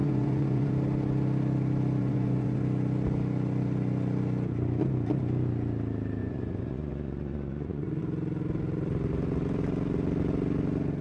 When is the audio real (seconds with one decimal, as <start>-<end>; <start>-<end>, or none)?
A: 0.7-2.0; 2.6-6.2; 8.0-11.0